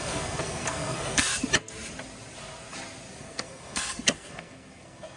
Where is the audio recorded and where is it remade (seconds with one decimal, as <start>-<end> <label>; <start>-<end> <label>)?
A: 0.0-1.3 remade; 1.3-3.2 recorded; 3.2-5.2 remade